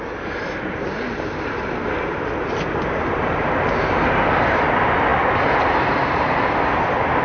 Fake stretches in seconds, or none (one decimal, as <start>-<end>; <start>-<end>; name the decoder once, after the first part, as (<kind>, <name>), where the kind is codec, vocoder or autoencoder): none

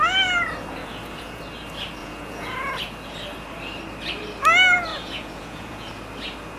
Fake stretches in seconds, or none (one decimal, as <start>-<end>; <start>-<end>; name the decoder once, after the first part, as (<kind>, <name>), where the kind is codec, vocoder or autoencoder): 0.8-1.4 (vocoder, Vocos); 2.0-2.7; 4.9-5.9

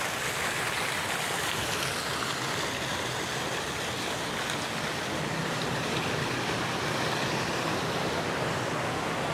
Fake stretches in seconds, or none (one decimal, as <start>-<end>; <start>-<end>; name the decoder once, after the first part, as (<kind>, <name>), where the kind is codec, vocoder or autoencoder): 5.4-6.0 (vocoder, BigVGAN v2)